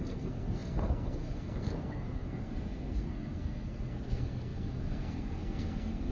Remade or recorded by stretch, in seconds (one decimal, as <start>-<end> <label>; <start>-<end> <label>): 0.0-6.1 remade